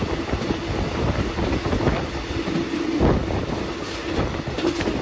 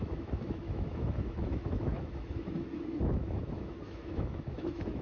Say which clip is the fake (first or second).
second